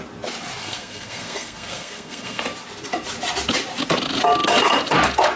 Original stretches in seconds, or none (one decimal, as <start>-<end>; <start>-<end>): 0.0-0.6; 2.4-5.4

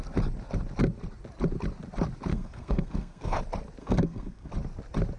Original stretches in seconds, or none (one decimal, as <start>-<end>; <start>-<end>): 0.0-2.3; 3.4-3.8; 4.5-5.2

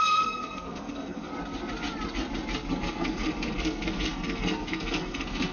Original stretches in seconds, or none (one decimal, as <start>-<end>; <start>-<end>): 1.3-2.7

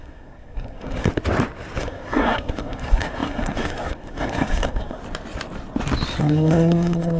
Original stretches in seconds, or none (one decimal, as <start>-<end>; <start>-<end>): 1.1-1.8; 5.0-6.2